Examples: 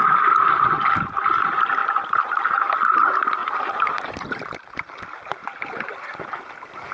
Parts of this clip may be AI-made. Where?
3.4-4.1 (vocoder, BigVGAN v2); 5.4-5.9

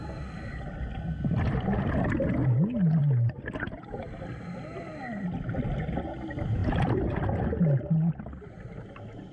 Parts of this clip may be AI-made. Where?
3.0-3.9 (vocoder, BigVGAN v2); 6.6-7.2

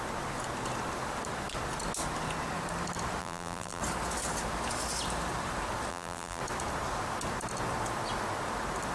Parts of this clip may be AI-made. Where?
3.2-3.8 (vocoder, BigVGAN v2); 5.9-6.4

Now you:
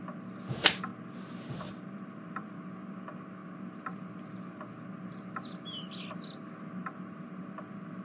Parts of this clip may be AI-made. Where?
0.9-2.6 (vocoder, BigVGAN v2)